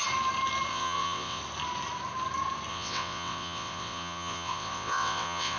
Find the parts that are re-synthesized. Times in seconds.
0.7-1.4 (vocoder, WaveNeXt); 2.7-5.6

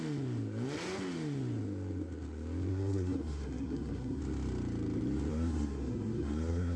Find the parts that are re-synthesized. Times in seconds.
2.7-4.2 (codec, SNAC); 5.3-6.8

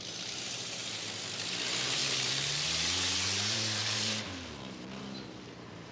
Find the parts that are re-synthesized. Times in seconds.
0.0-5.9 (vocoder, BigVGAN v2)

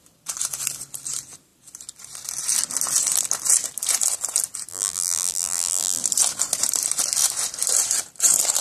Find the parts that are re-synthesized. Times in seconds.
4.7-6.0 (vocoder, BigVGAN v2)

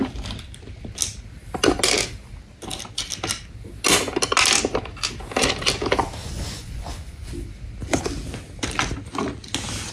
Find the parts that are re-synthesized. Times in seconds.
6.2-7.3 (vocoder, Vocos)

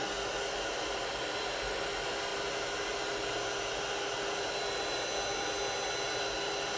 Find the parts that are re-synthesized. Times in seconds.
none

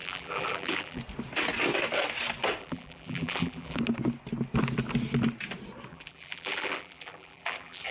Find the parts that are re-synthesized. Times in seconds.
0.0-1.0 (vocoder, BigVGAN v2); 2.6-3.8; 5.9-7.9

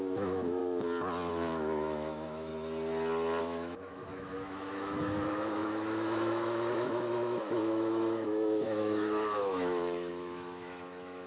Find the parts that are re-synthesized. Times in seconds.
0.0-0.6 (autoencoder, DAC-VAE); 1.3-2.5; 3.4-11.3